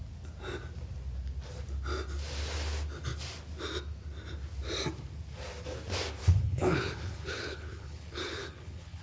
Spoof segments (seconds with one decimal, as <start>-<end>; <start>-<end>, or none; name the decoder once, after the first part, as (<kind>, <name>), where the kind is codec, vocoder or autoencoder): 6.2-9.0 (codec, HILCodec)